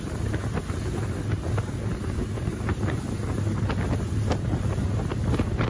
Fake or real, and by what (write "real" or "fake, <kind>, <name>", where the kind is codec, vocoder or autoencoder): real